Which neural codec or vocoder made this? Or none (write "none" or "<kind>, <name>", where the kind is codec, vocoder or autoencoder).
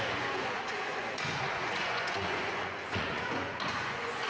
vocoder, Vocos